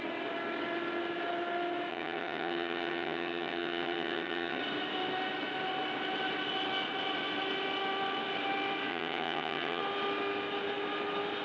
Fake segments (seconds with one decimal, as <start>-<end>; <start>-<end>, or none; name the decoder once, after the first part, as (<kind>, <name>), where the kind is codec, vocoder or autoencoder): 1.9-4.6 (vocoder, HiFi-GAN); 8.9-9.8